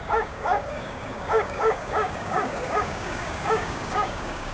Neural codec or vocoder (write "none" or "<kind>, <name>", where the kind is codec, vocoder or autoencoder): codec, DAC